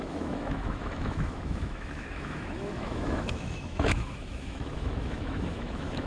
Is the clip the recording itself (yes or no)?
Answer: no